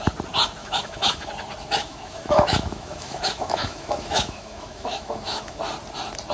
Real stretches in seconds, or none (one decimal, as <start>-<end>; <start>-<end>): 0.0-0.6; 1.3-1.8; 5.6-6.3